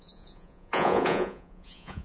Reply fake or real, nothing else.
fake